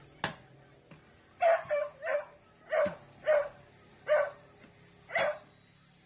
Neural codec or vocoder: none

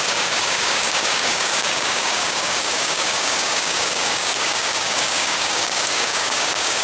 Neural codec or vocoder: codec, DAC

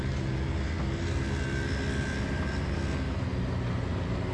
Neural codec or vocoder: none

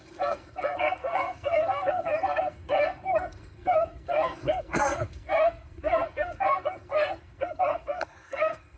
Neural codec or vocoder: codec, SNAC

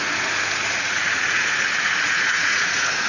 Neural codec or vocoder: vocoder, Vocos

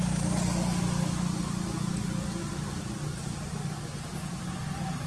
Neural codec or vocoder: none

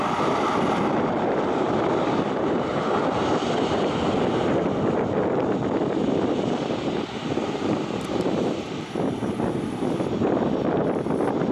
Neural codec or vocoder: vocoder, BigVGAN v2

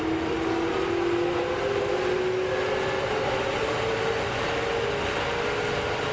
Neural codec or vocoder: none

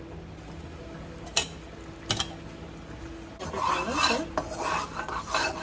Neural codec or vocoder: none